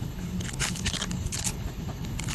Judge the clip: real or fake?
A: fake